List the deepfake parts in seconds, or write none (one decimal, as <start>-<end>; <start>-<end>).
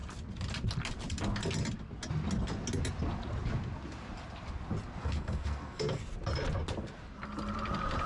5.0-6.0